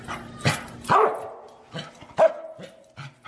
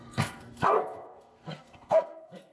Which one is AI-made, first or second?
second